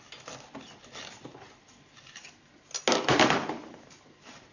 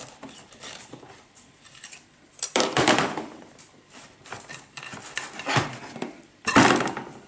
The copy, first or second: second